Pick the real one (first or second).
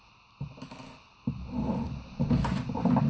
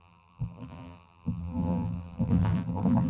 first